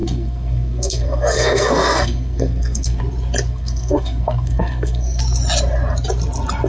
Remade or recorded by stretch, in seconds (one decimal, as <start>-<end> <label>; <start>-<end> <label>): 0.0-3.0 remade; 3.0-3.5 recorded; 3.5-5.2 remade; 5.2-6.7 recorded